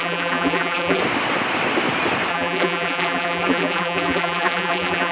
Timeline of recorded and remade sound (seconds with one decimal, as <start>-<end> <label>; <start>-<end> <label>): 0.0-1.0 remade; 1.0-2.3 recorded; 2.3-5.1 remade